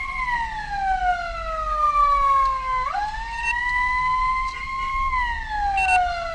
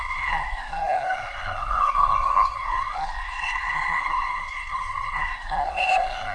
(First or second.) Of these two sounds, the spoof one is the second